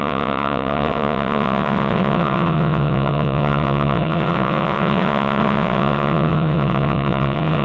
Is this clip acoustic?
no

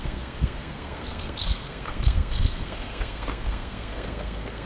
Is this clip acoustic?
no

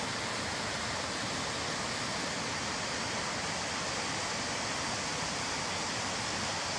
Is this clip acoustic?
yes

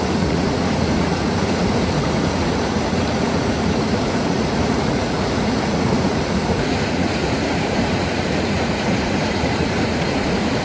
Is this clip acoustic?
no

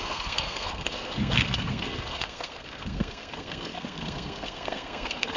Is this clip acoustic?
no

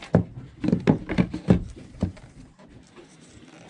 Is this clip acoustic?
yes